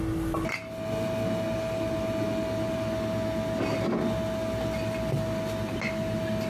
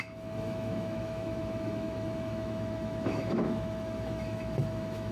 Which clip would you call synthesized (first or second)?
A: second